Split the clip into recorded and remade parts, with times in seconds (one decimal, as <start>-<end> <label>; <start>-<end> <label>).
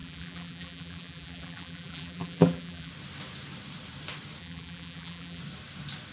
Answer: 0.0-2.9 remade; 2.9-4.4 recorded; 4.4-5.4 remade; 5.4-6.1 recorded